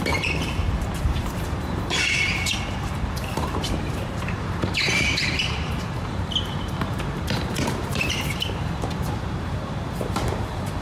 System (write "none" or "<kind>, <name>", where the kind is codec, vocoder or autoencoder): vocoder, BigVGAN v2